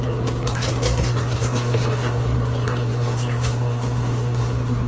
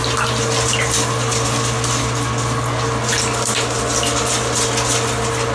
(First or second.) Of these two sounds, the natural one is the second